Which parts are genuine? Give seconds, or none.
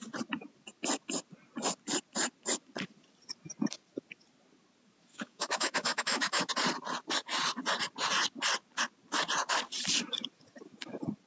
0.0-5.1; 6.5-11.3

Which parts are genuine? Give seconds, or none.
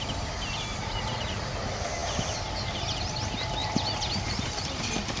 0.0-0.8; 1.5-5.2